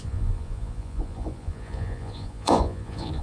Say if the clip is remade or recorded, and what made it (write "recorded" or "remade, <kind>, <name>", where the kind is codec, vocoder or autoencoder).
remade, vocoder, Vocos